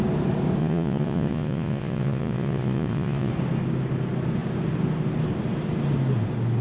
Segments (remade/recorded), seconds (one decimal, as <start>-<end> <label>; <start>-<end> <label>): 0.0-0.6 recorded; 0.6-3.3 remade; 3.3-6.6 recorded